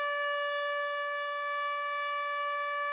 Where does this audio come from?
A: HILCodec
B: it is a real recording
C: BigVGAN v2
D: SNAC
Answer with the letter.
B